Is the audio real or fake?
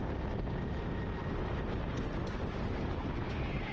real